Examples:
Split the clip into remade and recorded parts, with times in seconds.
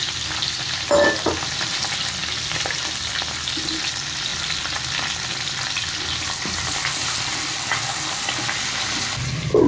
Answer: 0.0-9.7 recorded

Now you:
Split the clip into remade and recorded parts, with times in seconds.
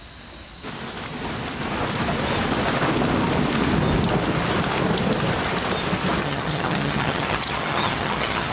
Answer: 0.0-6.2 recorded; 6.2-8.5 remade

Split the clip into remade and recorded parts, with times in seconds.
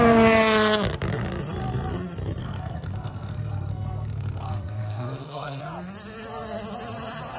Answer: 0.0-2.4 recorded; 2.4-5.6 remade; 5.6-7.4 recorded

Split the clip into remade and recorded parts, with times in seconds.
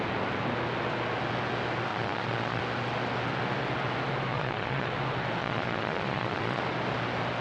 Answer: 0.0-1.9 recorded; 1.9-2.6 remade; 2.6-4.3 recorded; 4.3-4.9 remade; 4.9-5.4 recorded; 5.4-6.6 remade; 6.6-7.4 recorded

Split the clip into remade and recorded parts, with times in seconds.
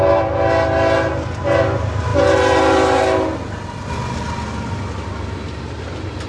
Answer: 0.0-6.3 recorded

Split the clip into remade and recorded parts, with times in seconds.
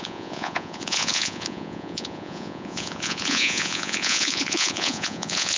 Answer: 0.0-5.6 remade